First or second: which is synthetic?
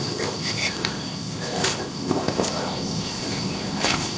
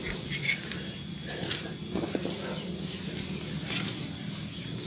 first